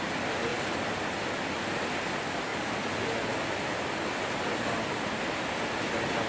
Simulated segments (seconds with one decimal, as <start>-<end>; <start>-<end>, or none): 0.5-1.0